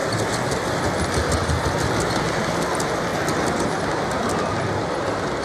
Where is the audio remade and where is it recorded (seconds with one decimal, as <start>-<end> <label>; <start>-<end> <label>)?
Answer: 0.0-5.4 recorded